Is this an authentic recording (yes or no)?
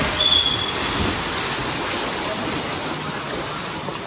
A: yes